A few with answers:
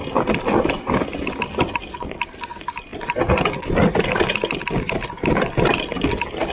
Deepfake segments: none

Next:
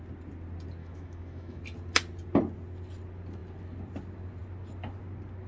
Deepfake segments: 0.8-1.6 (autoencoder, DAC-VAE)

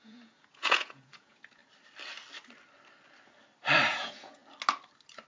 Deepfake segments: 0.0-1.6 (vocoder, Vocos); 3.9-4.4

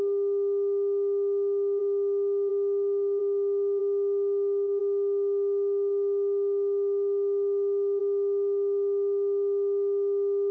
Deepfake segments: none

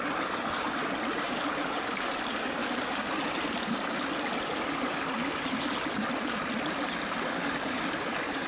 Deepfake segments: none

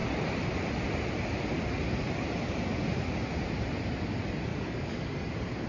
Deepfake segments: 4.5-5.3 (codec, DAC)

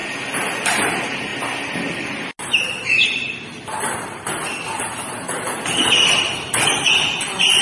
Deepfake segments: none